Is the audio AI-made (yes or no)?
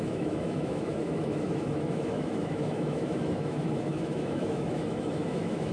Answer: yes